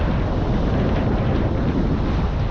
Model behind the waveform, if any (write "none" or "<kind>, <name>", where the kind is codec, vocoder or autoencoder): none